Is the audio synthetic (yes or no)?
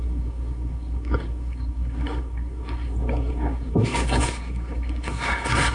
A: yes